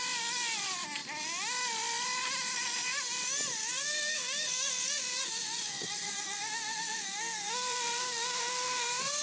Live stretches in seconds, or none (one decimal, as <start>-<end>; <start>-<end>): 0.0-3.6

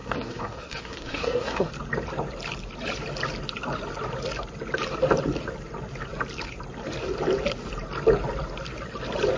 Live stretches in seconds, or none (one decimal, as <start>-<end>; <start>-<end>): 1.7-9.4

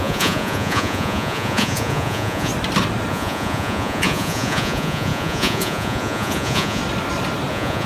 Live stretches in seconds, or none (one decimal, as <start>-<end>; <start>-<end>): 2.5-3.1; 6.8-7.5